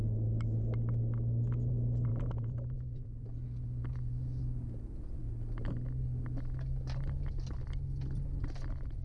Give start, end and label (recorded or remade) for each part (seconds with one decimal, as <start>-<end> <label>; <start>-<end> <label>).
0.0-2.1 recorded; 2.1-4.4 remade; 4.4-9.0 recorded